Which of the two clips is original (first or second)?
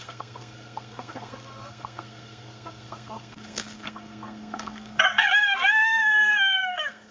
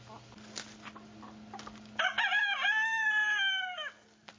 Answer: second